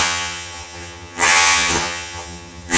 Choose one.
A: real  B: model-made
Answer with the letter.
B